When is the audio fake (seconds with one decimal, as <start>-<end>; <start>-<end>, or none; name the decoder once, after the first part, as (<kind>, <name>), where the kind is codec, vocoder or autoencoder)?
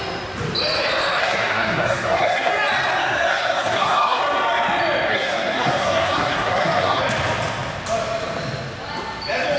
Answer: 1.2-2.5 (codec, SNAC); 3.0-4.2; 5.1-7.0